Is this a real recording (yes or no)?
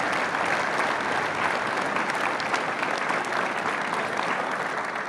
yes